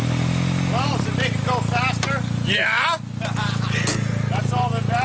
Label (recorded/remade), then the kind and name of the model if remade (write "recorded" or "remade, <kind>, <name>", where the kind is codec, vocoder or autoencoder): recorded